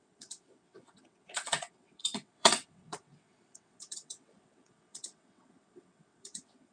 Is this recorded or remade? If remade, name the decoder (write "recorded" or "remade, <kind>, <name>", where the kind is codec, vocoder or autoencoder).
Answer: remade, vocoder, WaveNeXt